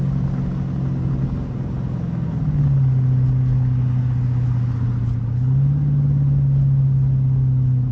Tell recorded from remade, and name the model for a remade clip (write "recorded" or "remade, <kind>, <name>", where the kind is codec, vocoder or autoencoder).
recorded